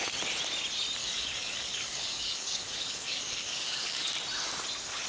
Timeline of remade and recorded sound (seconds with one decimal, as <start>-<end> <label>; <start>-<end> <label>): 0.0-1.0 recorded; 1.0-4.1 remade; 4.1-5.1 recorded